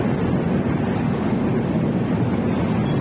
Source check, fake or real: real